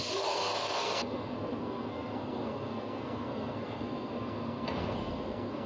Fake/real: fake